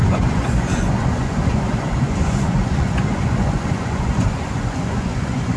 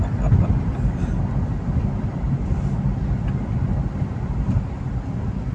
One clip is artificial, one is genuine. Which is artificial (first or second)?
first